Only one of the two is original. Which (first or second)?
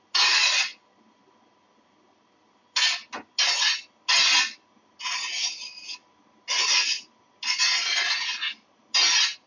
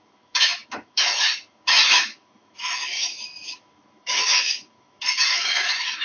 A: first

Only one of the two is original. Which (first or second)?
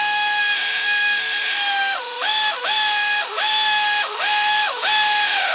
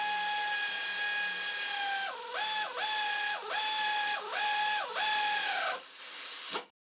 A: second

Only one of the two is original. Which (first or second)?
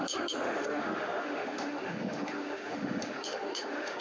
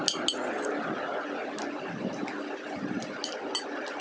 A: second